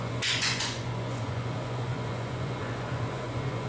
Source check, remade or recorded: remade